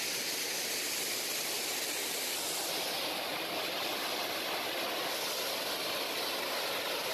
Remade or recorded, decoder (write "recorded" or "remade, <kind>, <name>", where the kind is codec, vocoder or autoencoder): recorded